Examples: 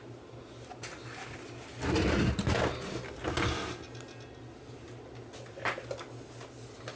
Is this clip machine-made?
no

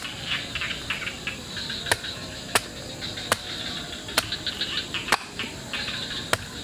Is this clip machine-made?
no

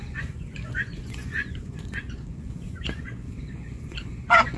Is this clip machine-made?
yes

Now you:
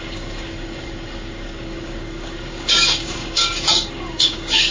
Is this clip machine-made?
yes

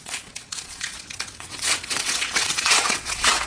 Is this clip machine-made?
yes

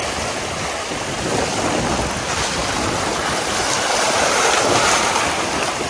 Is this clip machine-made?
no